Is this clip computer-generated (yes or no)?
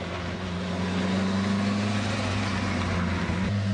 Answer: no